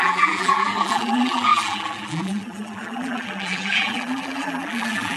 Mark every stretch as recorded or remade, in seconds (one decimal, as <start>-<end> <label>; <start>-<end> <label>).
0.0-5.2 remade